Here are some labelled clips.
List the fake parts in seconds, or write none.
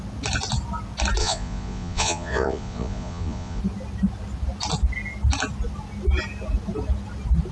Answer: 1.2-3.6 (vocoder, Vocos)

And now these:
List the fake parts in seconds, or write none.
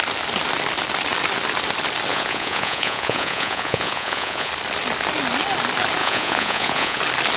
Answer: 2.1-4.5 (vocoder, Vocos); 6.0-7.0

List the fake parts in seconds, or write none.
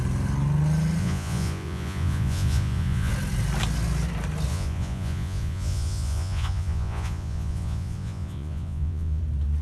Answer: 1.0-3.1 (vocoder, Vocos); 4.5-9.2